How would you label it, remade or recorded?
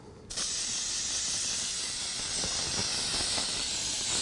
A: recorded